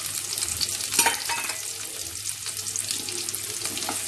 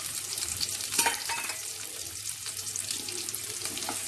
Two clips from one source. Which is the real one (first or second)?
first